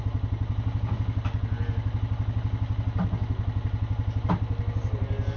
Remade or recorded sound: recorded